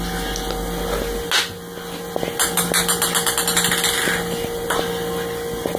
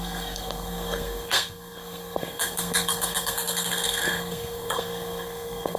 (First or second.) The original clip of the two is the first